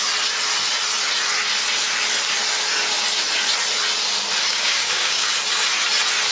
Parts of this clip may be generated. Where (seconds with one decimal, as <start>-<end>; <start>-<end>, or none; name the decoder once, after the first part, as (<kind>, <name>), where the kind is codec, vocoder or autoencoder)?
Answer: 4.5-5.3 (codec, DAC)